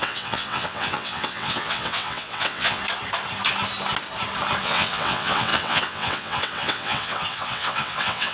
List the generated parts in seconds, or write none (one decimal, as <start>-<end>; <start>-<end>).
0.0-2.8; 4.6-8.3

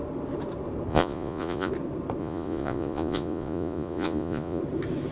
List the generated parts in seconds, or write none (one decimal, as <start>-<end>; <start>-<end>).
0.9-1.7; 2.2-4.6

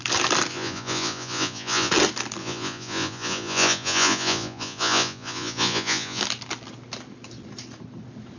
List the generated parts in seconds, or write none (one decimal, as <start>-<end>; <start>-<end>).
0.5-1.9; 2.4-6.2

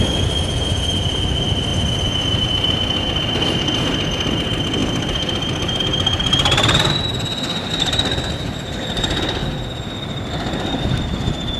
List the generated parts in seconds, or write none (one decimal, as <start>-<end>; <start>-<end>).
4.8-5.8; 7.6-9.2